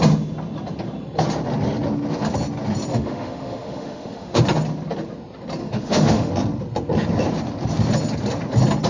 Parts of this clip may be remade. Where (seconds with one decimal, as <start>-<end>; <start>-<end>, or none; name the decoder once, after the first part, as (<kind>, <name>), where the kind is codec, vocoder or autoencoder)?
2.9-4.4 (autoencoder, DAC-VAE); 5.6-6.3